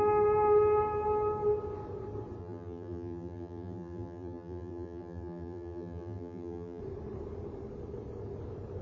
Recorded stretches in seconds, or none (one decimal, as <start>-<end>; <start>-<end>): 0.0-2.4; 6.8-8.8